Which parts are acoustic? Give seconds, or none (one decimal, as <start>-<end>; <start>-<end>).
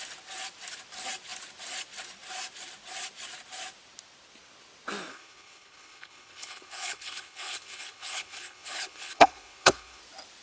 0.0-5.1; 10.0-10.4